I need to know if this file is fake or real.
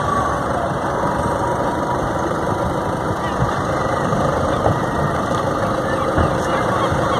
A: fake